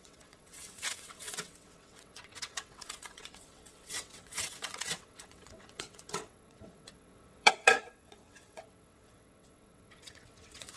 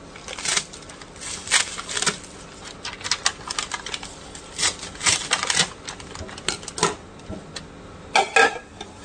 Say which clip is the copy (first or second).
first